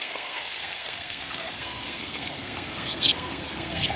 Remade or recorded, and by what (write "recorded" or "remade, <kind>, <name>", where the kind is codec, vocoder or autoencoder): remade, codec, SNAC